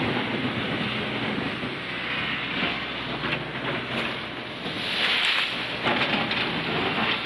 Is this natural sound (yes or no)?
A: yes